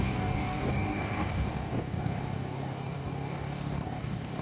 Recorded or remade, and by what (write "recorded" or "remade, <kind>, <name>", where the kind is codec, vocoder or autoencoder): remade, codec, DAC